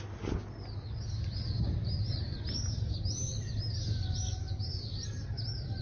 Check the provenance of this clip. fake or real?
real